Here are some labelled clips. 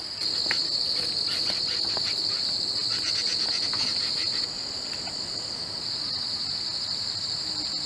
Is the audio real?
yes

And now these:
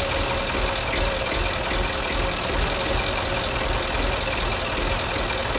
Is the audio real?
yes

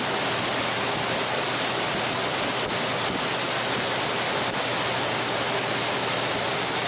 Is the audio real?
yes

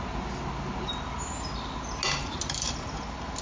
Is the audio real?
yes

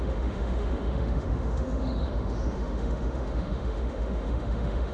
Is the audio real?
no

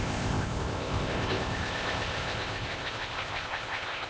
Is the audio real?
no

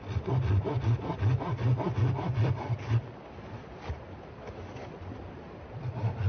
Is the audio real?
yes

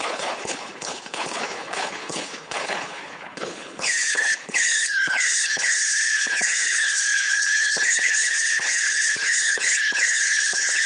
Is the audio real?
no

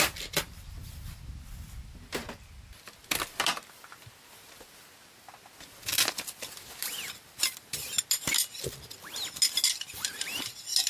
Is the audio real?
yes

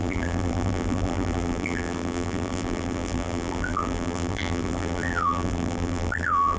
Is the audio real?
no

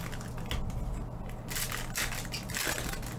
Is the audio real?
yes